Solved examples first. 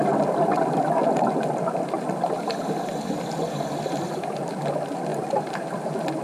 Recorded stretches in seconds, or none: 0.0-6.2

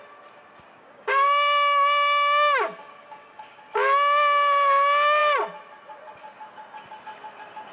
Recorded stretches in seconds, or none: 0.0-0.8; 3.6-7.7

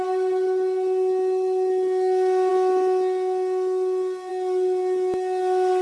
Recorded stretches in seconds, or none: 0.0-5.8

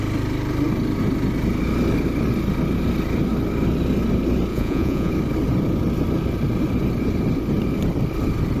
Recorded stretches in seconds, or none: 0.0-4.5; 5.1-8.6

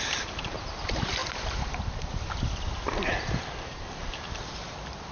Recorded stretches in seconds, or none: none

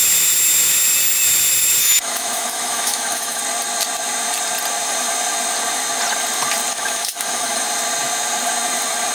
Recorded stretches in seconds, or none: 0.0-1.8; 3.4-6.7; 7.6-9.1